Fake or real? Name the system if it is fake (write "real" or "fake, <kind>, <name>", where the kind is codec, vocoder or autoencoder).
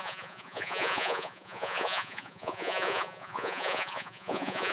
fake, vocoder, Vocos